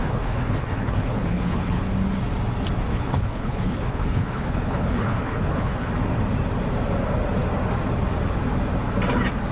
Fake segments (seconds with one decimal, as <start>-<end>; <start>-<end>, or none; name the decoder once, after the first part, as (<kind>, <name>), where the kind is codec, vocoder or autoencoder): 0.0-1.8 (codec, HILCodec); 2.9-5.9